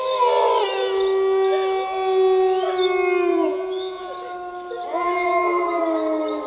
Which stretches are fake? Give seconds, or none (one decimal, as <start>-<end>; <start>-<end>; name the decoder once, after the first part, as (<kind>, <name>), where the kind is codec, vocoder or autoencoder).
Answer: 3.3-4.1 (vocoder, Vocos); 4.9-5.8